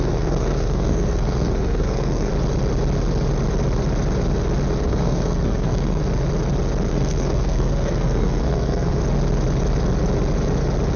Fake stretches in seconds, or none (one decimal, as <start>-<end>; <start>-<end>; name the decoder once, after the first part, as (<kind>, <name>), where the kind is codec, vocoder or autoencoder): 0.0-2.3 (codec, SNAC); 4.8-6.0; 6.9-9.0